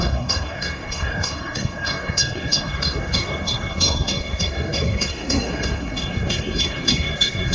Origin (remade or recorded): remade